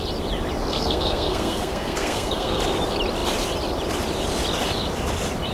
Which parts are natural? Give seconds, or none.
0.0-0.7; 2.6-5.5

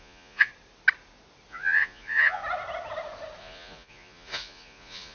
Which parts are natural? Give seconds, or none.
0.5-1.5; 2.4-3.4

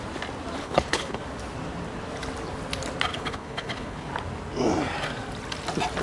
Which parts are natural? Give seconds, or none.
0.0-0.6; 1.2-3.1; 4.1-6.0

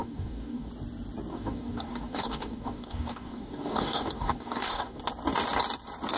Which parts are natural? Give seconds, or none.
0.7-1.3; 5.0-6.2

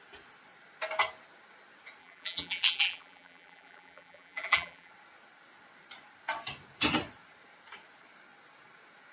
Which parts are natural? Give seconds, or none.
0.0-2.0; 4.9-9.1

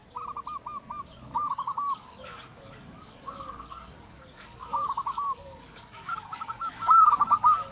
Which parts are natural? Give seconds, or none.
0.0-1.0

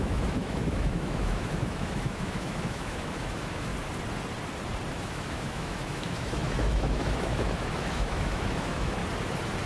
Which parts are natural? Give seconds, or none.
3.7-4.9; 9.0-9.7

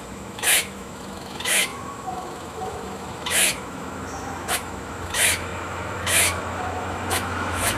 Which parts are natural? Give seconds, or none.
none